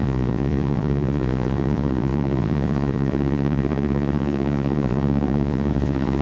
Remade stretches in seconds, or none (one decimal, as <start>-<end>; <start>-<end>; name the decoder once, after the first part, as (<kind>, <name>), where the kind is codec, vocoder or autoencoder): 0.0-6.2 (vocoder, Vocos)

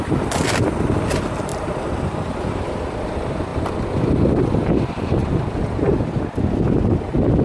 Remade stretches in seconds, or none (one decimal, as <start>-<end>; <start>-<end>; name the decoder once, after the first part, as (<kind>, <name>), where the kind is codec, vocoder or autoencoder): 1.5-2.3 (vocoder, BigVGAN v2)

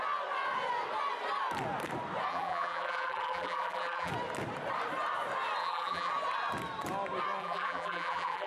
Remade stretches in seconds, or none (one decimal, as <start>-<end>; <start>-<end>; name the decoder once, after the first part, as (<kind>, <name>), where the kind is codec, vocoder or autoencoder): 2.3-4.1 (vocoder, BigVGAN v2); 5.6-6.1; 7.4-8.5

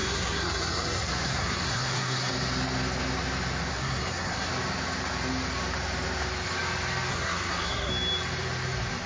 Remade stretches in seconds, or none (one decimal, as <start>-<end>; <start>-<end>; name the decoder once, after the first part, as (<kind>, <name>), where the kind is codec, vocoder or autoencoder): 0.0-2.3 (codec, SNAC); 3.7-4.5; 7.1-7.9

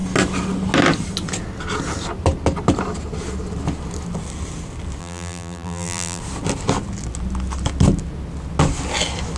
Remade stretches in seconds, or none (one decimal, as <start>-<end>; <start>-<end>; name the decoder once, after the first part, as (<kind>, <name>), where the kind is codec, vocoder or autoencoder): 5.0-6.2 (vocoder, BigVGAN v2)

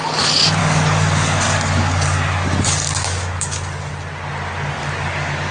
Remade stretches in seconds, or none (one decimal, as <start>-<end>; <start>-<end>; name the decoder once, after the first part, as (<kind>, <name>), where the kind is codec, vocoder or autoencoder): 0.6-3.9 (codec, DAC); 4.8-5.5